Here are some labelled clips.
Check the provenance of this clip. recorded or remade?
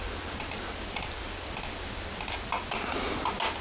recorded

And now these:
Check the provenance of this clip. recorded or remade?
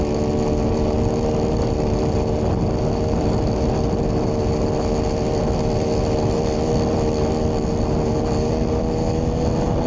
recorded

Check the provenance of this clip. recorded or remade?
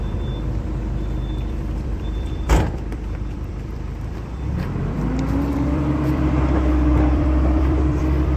remade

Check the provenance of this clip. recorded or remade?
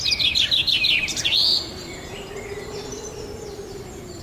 remade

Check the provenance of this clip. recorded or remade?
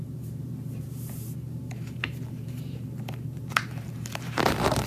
remade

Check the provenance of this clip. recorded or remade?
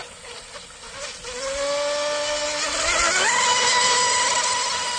recorded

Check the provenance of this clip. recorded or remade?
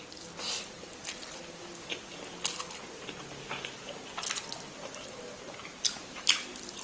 recorded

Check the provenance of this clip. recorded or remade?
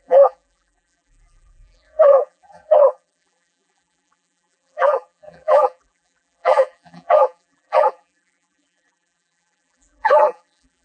remade